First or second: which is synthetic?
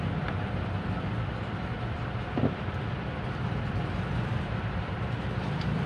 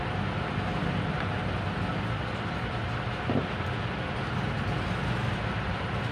first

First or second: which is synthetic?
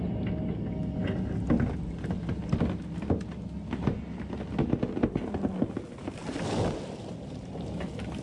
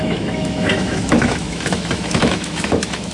second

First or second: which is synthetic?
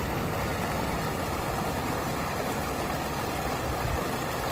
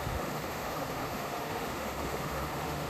second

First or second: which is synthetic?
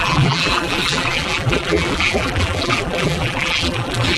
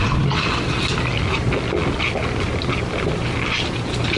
first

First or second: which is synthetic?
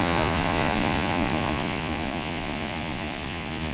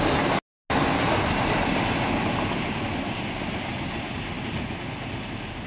first